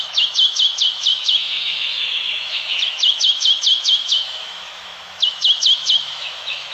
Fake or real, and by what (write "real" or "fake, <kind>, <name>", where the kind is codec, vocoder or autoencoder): fake, autoencoder, DAC-VAE